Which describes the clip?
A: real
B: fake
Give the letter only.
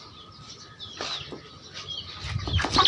A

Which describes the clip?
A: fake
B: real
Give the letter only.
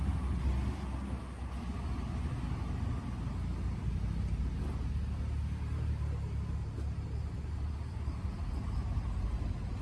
B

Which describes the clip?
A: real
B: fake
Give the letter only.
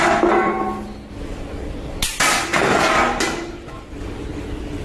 A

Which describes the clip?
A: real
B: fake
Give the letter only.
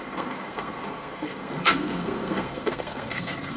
B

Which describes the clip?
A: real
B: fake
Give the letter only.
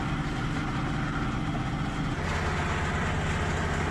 A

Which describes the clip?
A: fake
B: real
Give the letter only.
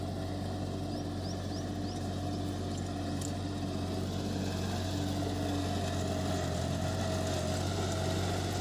B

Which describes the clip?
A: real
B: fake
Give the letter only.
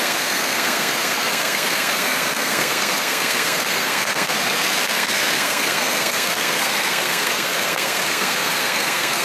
B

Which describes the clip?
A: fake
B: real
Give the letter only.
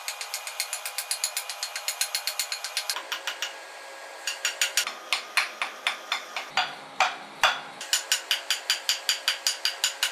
B